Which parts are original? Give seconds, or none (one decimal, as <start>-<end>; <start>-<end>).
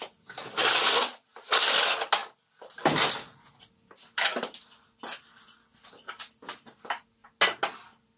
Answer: 0.0-8.2